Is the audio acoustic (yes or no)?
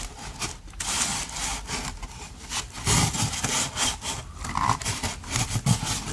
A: yes